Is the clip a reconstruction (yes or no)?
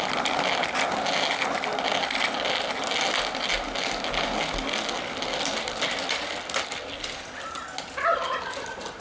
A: no